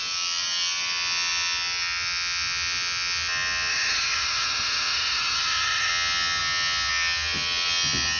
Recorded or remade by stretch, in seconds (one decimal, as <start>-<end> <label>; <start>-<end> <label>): 0.0-3.7 recorded; 3.7-5.9 remade; 5.9-8.2 recorded